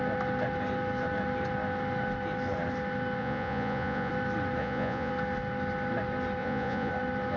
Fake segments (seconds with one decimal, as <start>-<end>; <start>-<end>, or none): 3.2-4.1; 4.6-5.1; 6.4-6.9